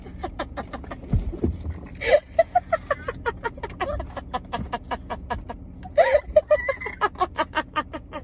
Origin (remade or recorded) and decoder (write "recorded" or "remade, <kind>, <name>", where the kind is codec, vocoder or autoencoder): recorded